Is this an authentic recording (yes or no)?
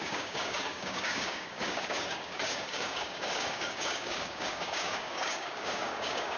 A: no